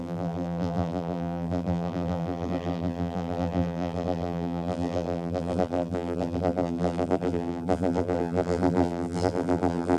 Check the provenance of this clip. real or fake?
fake